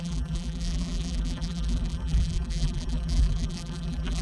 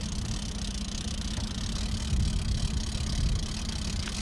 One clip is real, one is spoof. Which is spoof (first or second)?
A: first